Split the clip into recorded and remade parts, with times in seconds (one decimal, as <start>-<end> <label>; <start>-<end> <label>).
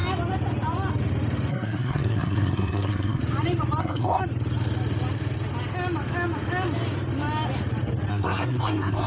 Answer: 0.0-1.5 recorded; 1.5-3.2 remade; 3.2-3.8 recorded; 3.8-4.2 remade; 4.2-8.1 recorded; 8.1-9.1 remade